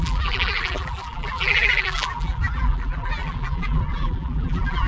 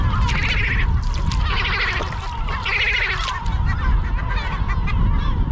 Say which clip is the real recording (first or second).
second